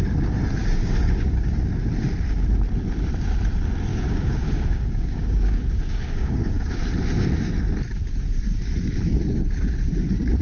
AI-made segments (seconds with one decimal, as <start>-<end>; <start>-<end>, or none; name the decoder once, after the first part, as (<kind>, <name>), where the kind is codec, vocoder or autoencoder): 0.6-1.6 (codec, DAC); 3.9-6.8